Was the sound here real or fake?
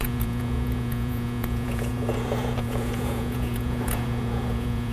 fake